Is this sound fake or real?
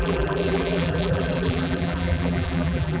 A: fake